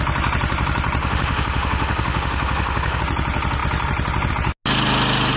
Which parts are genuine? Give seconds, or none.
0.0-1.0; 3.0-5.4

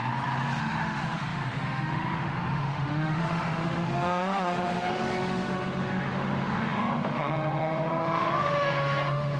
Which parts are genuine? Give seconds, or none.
0.0-0.6